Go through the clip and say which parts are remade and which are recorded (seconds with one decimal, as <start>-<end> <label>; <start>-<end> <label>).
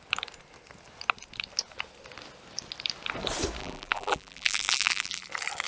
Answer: 0.0-3.6 recorded; 3.6-5.2 remade; 5.2-5.7 recorded